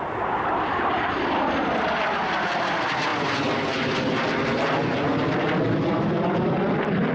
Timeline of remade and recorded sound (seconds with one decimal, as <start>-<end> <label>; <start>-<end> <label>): 0.0-7.1 recorded